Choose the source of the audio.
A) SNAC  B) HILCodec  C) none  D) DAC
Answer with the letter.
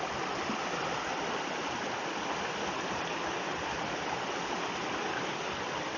C